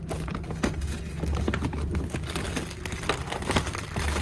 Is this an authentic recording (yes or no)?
yes